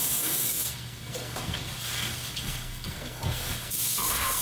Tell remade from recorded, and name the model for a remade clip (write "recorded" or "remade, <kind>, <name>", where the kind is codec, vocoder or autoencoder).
remade, codec, SNAC